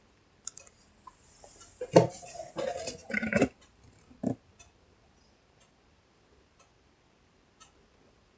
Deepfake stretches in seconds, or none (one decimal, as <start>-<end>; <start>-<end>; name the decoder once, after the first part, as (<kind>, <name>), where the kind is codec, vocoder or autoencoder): 3.0-4.3 (vocoder, BigVGAN v2)